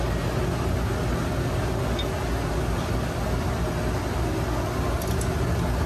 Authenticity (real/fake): real